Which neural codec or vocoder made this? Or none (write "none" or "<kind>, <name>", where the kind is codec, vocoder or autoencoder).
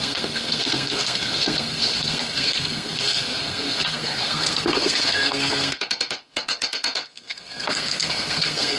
codec, SNAC